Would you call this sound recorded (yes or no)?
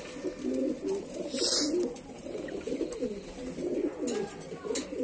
yes